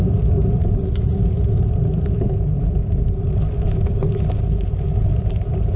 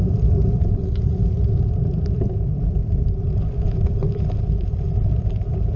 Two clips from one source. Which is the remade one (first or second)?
second